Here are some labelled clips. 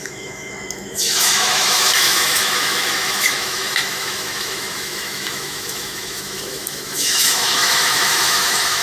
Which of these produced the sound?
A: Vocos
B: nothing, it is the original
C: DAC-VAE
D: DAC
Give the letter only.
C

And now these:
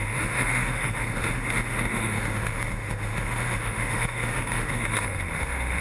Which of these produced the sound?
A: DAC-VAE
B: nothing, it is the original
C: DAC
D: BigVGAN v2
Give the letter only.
A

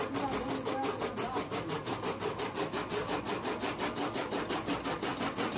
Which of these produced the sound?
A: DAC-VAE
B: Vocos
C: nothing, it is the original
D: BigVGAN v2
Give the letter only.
C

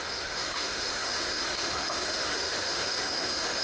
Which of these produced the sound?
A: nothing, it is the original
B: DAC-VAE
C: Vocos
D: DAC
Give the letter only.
B